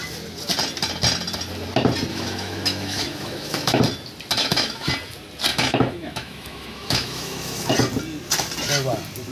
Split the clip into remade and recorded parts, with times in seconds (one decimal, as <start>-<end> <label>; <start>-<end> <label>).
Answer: 0.0-2.1 recorded; 2.1-3.8 remade; 3.8-4.4 recorded; 4.4-4.9 remade; 4.9-5.5 recorded; 5.5-7.7 remade; 7.7-9.3 recorded